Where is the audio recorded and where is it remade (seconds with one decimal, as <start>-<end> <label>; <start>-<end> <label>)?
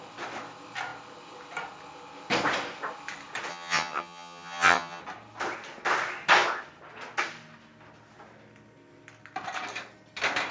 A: 0.0-3.5 recorded; 3.5-5.0 remade; 5.0-10.5 recorded